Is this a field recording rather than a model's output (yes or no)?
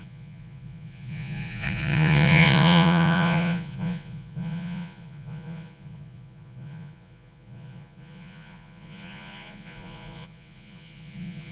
no